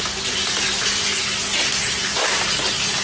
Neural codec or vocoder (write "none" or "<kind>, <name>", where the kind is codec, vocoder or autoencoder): none